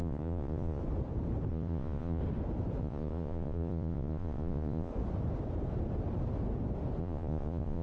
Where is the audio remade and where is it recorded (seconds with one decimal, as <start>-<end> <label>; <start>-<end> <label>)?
0.0-0.8 remade; 0.8-1.5 recorded; 1.5-2.2 remade; 2.2-2.8 recorded; 2.8-4.9 remade; 4.9-7.0 recorded; 7.0-7.8 remade